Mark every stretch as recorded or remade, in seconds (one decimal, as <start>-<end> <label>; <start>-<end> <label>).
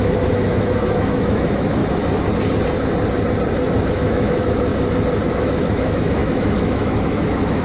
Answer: 0.0-1.8 remade; 1.8-3.9 recorded; 3.9-4.7 remade; 4.7-5.3 recorded; 5.3-7.6 remade